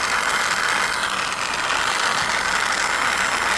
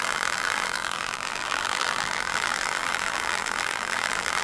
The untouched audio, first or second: first